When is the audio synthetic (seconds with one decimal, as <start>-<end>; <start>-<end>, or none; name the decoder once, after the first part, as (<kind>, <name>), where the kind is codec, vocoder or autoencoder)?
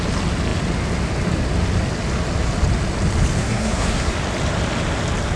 3.4-4.1 (codec, SNAC)